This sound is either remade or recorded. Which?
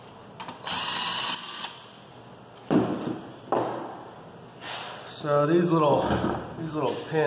recorded